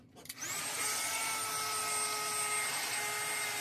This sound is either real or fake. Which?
real